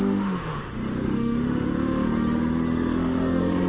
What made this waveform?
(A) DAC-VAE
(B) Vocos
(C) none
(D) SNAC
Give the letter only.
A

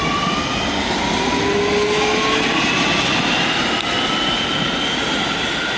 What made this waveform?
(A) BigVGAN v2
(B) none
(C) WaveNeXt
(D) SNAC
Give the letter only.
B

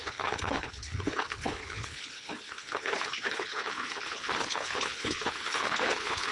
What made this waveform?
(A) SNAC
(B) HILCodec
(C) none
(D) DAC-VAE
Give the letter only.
B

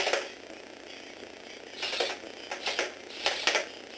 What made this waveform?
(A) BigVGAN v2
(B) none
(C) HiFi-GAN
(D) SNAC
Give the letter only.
B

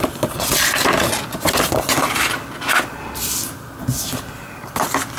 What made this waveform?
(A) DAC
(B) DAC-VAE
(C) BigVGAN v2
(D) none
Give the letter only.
C